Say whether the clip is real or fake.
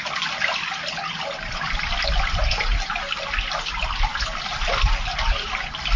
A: real